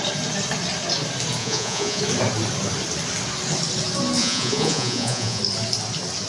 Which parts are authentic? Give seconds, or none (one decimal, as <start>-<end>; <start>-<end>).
0.0-1.4; 2.0-4.2; 5.4-6.3